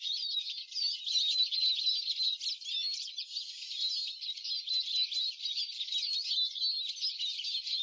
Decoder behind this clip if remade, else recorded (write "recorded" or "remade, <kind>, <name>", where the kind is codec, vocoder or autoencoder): recorded